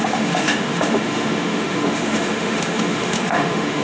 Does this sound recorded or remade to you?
remade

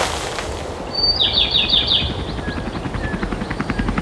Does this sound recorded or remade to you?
recorded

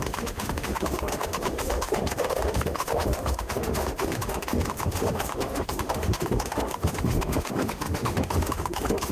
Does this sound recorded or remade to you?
remade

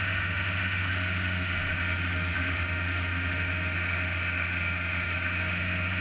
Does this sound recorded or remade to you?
remade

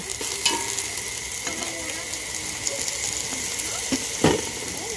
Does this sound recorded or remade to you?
recorded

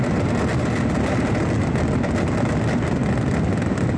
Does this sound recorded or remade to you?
recorded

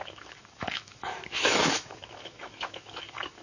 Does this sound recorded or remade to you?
remade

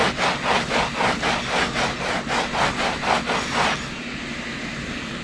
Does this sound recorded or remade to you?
recorded